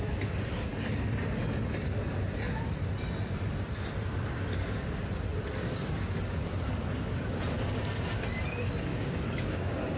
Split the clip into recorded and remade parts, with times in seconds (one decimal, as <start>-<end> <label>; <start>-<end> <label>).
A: 0.0-8.9 recorded; 8.9-10.0 remade